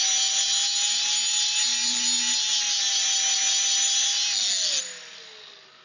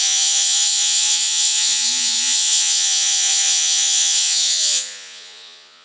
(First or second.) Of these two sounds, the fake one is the second